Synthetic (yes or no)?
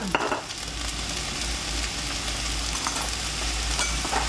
no